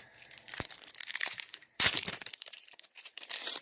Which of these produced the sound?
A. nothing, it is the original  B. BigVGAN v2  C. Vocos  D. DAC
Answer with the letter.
B